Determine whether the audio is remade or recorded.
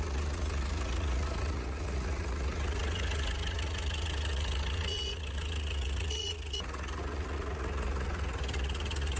remade